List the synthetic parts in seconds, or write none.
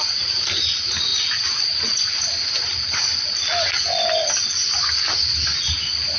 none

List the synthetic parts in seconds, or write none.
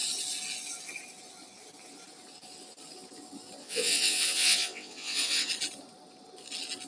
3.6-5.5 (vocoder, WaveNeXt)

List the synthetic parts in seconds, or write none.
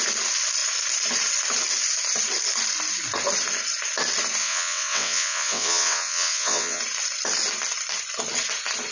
4.4-6.8 (vocoder, WaveNeXt)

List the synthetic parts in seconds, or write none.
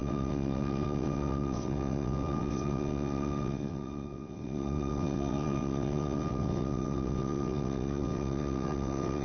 0.0-9.2 (vocoder, WaveNeXt)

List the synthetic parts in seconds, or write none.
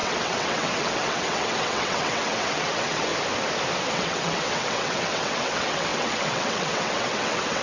0.0-3.1 (vocoder, WaveNeXt); 3.9-7.6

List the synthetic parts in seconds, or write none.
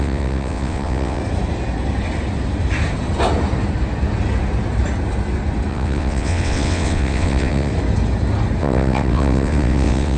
0.0-1.2 (vocoder, WaveNeXt); 5.7-7.7; 8.6-10.2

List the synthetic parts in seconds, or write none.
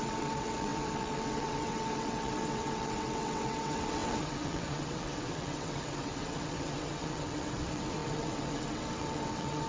0.0-9.7 (vocoder, WaveNeXt)